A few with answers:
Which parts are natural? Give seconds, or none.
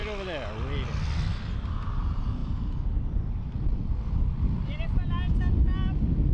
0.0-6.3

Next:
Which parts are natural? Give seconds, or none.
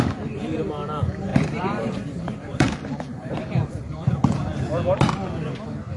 4.5-6.0